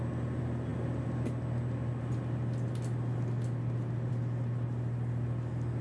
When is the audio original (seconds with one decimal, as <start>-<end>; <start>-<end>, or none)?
0.0-5.8